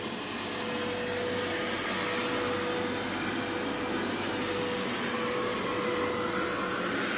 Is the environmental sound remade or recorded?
recorded